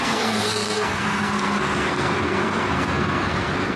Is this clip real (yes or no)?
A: no